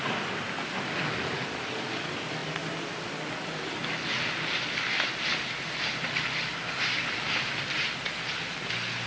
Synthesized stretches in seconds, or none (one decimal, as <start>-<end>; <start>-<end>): none